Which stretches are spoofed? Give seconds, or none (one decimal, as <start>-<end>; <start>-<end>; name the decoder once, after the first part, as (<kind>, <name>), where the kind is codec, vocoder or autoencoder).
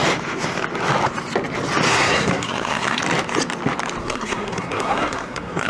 1.9-3.0 (codec, SNAC); 4.0-5.7